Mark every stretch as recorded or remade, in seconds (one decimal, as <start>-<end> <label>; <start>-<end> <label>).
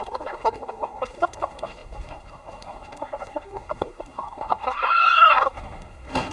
0.0-6.3 remade